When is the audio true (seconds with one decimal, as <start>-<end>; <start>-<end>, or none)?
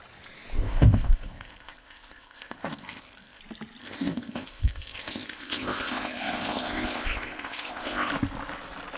0.0-0.6; 3.4-3.8; 8.1-9.0